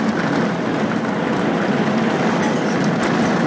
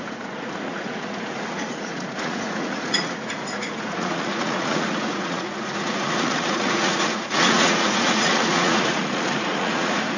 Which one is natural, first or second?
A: first